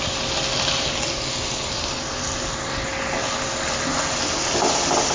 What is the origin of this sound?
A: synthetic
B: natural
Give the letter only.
B